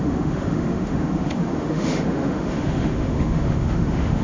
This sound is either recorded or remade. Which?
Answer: remade